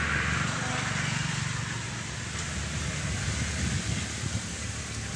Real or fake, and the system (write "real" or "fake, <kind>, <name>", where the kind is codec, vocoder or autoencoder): real